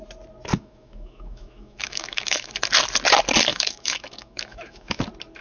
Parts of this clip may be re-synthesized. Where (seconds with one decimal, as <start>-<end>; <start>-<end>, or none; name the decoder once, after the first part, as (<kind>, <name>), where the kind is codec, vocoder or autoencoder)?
0.5-2.5 (autoencoder, DAC-VAE); 3.5-5.0